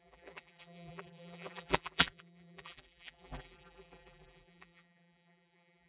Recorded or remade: remade